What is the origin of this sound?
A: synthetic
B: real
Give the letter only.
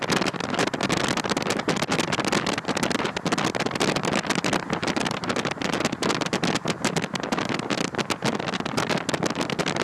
B